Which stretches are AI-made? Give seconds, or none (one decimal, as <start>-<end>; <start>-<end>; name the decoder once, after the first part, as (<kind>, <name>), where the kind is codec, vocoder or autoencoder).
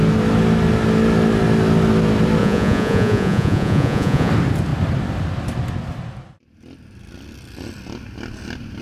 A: 2.4-4.3 (vocoder, Vocos)